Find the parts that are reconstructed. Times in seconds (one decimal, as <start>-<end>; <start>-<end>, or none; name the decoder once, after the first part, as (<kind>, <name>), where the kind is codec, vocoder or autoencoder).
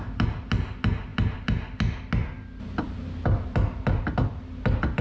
none